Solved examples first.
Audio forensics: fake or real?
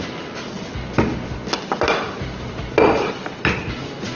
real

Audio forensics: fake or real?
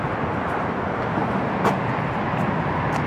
real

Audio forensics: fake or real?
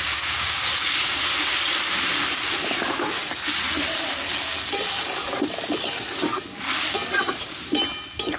real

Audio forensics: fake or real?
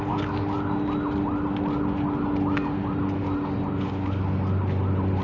real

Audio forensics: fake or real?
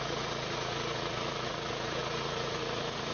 fake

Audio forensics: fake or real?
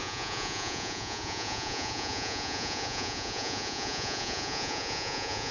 fake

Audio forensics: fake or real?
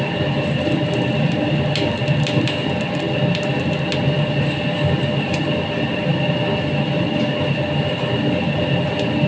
real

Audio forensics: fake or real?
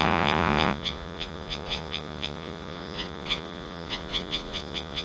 fake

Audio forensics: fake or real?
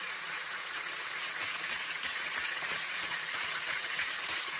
fake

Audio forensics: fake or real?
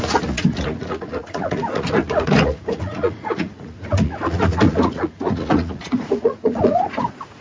fake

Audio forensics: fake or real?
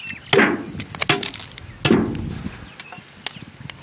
real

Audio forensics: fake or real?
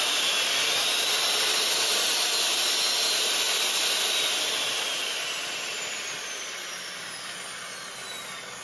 real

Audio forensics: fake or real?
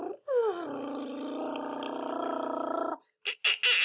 real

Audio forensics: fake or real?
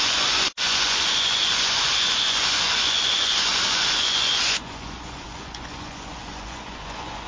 fake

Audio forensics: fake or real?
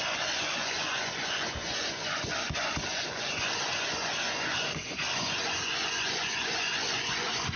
fake